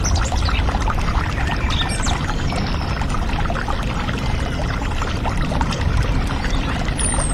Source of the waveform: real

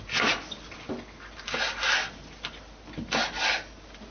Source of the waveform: real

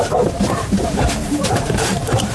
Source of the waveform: fake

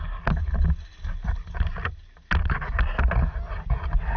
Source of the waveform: real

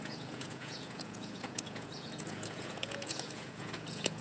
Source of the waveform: fake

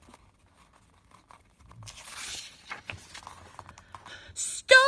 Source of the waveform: real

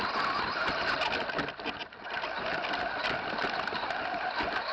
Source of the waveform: real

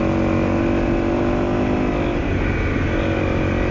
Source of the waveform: real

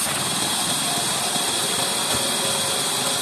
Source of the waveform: real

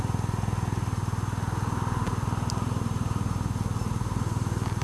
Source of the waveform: real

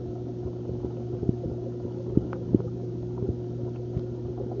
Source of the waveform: real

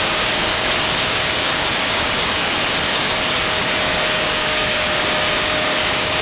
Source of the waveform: fake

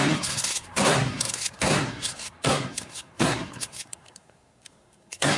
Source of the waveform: fake